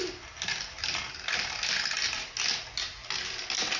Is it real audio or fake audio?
real